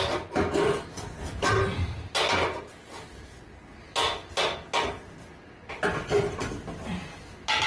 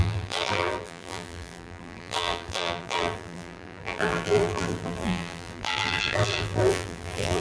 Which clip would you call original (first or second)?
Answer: first